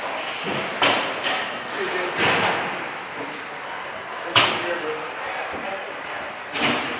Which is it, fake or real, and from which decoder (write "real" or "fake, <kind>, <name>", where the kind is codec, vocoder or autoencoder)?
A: real